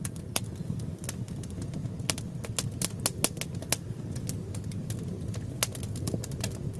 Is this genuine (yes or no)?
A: yes